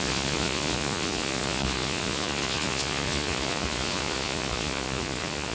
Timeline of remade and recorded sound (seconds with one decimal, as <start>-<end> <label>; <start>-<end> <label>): 0.0-5.5 remade